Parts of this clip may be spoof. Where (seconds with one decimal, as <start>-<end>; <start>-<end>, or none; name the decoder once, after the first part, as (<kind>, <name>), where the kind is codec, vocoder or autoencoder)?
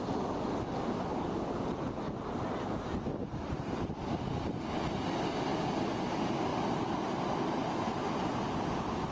none